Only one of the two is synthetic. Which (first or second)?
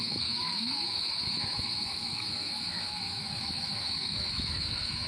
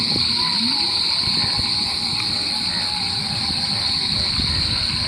first